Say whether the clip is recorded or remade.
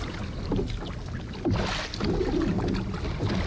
recorded